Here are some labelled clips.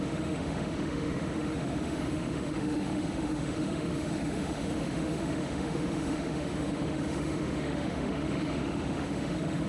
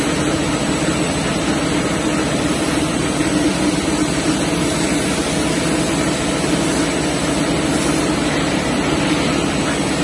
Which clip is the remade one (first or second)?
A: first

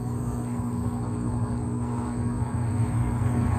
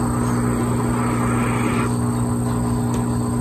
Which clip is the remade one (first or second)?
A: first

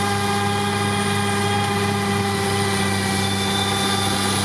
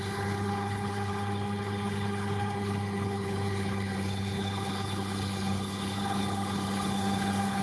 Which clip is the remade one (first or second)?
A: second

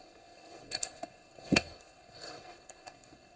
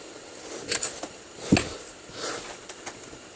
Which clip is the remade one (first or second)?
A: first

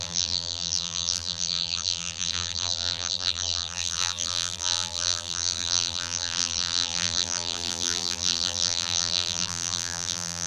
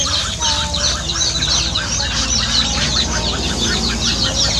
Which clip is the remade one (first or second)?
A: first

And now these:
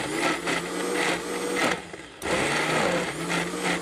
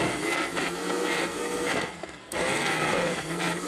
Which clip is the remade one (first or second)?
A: second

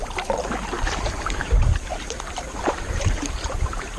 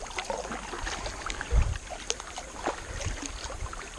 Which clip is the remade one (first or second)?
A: first